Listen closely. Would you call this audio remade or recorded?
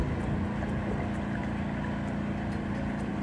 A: recorded